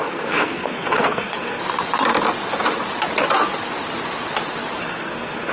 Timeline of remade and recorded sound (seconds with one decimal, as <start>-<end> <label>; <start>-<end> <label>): 0.0-1.6 remade; 1.6-4.8 recorded; 4.8-5.5 remade